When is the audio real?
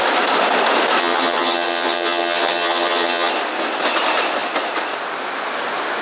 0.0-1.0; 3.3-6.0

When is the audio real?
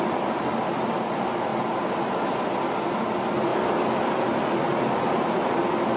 0.0-6.0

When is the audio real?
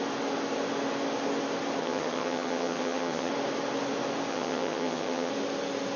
0.0-1.8; 3.3-4.3; 5.3-6.0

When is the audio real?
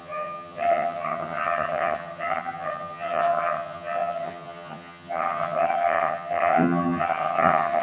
none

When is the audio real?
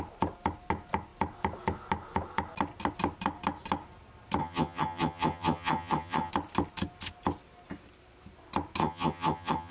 0.0-4.4; 6.3-8.8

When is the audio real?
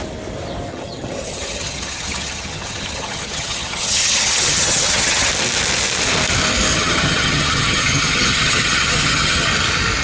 0.0-0.7; 5.3-6.7; 9.5-10.0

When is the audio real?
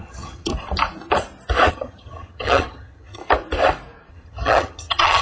0.5-1.7; 3.2-4.1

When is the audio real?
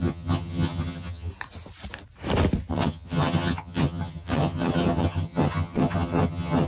1.3-2.7